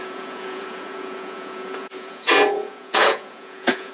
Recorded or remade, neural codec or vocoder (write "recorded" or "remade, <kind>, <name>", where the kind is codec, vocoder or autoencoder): remade, vocoder, Vocos